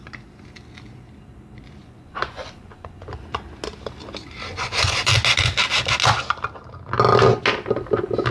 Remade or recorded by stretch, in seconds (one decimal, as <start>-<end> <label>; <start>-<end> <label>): 0.0-1.8 recorded; 1.8-3.1 remade; 3.1-4.5 recorded; 4.5-5.1 remade; 5.1-8.3 recorded